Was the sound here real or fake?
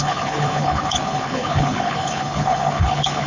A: fake